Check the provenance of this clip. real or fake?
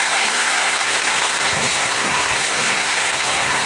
fake